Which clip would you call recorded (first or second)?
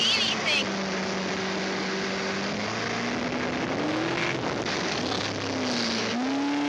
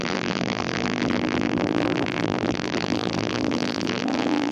first